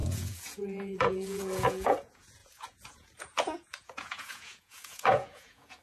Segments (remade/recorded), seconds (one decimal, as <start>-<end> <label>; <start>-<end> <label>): 0.0-5.8 remade